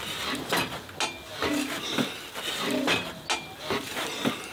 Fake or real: real